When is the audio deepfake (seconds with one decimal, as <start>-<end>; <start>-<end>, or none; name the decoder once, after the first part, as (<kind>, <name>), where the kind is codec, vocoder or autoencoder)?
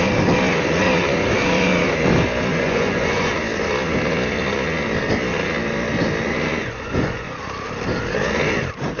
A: 2.5-3.3 (vocoder, Vocos); 6.5-7.4